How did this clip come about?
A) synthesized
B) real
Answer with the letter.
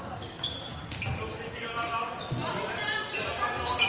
B